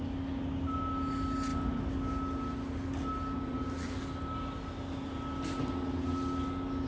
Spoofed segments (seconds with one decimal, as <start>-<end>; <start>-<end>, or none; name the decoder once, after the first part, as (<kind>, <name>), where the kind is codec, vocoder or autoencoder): none